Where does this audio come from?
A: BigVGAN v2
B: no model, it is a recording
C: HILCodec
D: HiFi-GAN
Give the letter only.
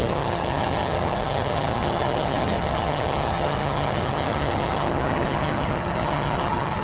D